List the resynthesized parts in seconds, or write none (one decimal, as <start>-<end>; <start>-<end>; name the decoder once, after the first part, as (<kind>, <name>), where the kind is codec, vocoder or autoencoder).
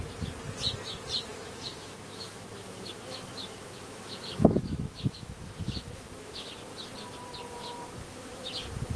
1.3-6.5 (autoencoder, DAC-VAE); 7.6-8.4